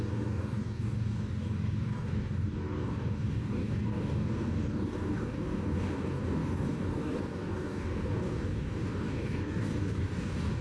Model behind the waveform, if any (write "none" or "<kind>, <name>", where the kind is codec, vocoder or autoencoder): codec, DAC